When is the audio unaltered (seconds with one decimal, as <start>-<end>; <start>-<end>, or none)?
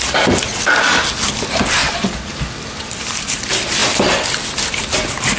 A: 0.0-5.4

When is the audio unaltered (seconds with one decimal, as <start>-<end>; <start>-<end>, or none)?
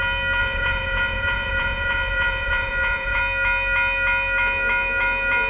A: 0.0-0.4; 3.2-5.5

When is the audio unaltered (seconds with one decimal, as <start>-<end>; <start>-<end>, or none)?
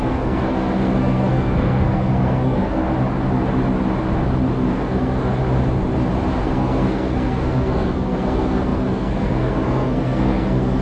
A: 2.8-4.7; 5.4-6.4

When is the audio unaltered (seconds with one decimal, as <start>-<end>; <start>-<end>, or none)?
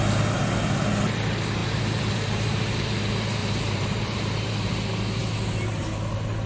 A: 0.0-1.6; 3.0-3.4; 4.7-6.5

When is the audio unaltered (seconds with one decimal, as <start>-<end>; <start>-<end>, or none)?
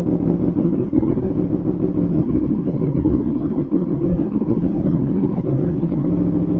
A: 0.0-0.6; 1.3-2.1; 6.1-6.6